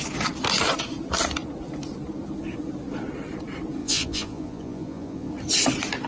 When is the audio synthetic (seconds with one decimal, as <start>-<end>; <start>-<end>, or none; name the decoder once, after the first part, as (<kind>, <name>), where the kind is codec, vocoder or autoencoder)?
3.8-5.3 (vocoder, Vocos)